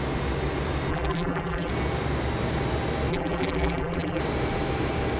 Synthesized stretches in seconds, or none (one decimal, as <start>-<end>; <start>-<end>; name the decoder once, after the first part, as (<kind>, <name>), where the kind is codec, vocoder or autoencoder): 0.9-1.7 (vocoder, BigVGAN v2); 3.1-4.2